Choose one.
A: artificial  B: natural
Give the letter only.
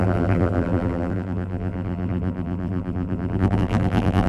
A